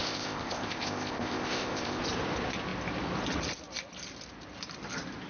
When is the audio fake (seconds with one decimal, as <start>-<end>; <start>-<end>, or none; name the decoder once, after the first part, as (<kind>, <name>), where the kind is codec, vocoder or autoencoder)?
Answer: 0.0-2.0 (codec, ZipCodec)